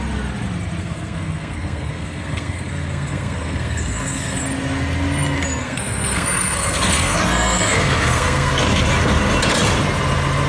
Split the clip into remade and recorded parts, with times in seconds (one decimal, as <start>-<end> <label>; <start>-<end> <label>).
0.0-0.8 recorded; 0.8-4.4 remade; 4.4-5.6 recorded; 5.6-8.5 remade; 8.5-10.5 recorded